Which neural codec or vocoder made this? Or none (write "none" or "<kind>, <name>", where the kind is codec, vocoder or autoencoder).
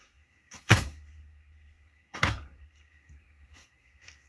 codec, SNAC